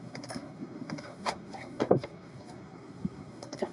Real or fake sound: fake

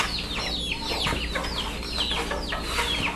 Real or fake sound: real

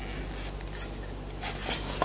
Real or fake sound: real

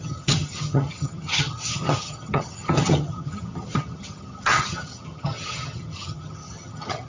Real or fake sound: fake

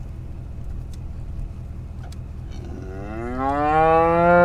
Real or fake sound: real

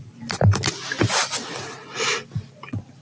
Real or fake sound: real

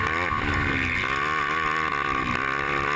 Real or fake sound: real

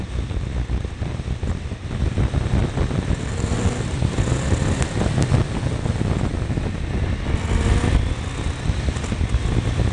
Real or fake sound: real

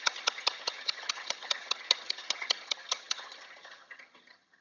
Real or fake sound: fake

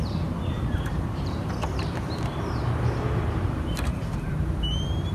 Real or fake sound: fake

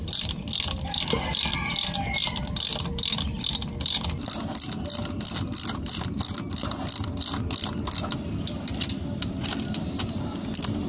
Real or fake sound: real